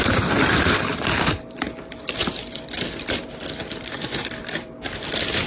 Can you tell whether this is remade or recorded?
remade